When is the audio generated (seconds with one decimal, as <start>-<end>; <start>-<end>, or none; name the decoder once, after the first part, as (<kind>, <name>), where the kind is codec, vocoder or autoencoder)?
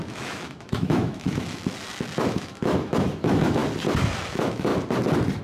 0.0-1.6 (autoencoder, DAC-VAE); 2.3-3.6; 4.3-4.7